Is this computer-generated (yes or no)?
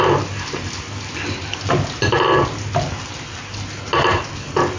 no